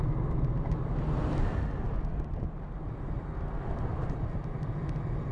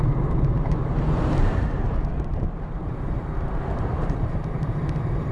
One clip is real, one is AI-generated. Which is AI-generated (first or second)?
second